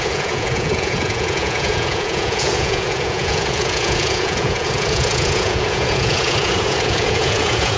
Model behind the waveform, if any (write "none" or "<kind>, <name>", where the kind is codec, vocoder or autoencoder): vocoder, Vocos